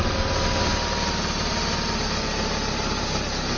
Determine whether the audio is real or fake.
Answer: real